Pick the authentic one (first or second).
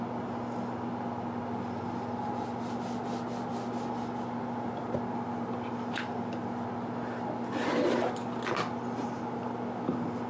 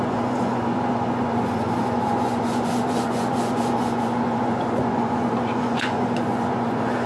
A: first